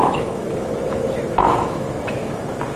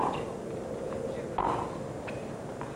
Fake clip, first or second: first